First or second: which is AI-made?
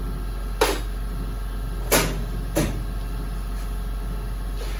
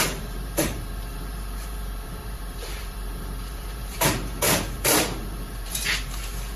second